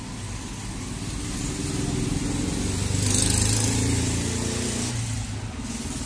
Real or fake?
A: real